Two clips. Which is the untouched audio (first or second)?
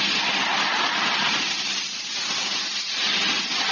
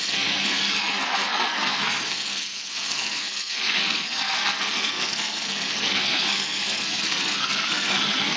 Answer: first